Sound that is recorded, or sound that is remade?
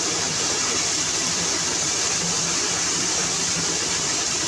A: remade